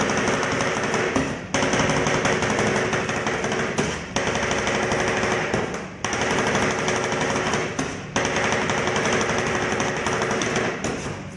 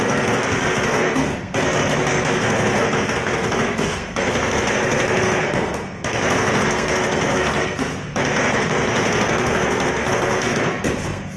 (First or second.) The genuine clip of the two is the first